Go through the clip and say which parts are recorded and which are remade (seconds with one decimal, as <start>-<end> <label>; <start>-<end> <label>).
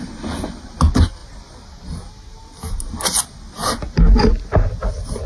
0.0-5.3 recorded